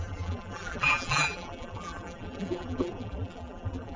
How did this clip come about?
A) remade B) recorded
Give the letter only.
A